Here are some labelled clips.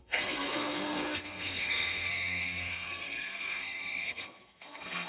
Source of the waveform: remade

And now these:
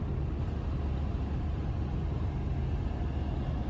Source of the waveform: recorded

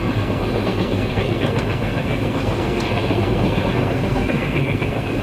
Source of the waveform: remade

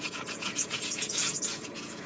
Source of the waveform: remade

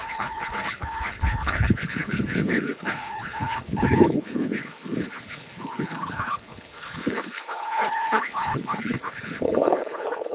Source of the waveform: remade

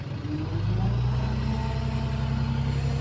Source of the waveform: recorded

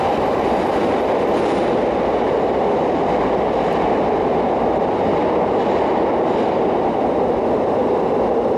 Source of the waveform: remade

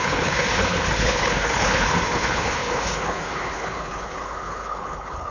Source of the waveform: remade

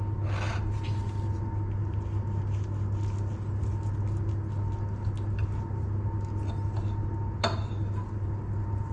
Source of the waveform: recorded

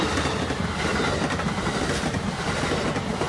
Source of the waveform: recorded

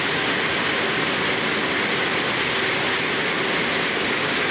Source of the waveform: recorded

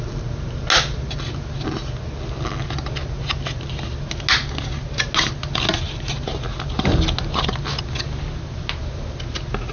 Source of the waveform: recorded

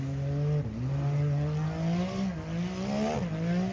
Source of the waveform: recorded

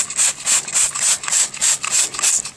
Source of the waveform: recorded